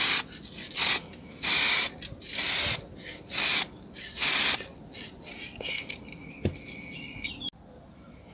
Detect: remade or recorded recorded